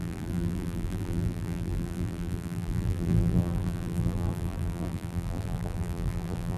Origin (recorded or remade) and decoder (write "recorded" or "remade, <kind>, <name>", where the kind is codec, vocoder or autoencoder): remade, vocoder, BigVGAN v2